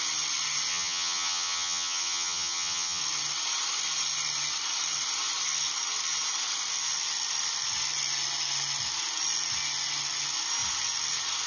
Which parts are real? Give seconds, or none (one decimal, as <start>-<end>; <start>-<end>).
0.0-0.7; 3.0-11.5